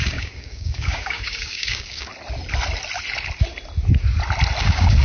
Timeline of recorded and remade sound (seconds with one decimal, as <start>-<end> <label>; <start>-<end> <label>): 0.0-2.1 remade; 2.1-4.6 recorded; 4.6-5.0 remade